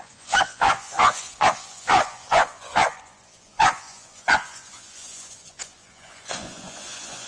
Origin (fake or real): fake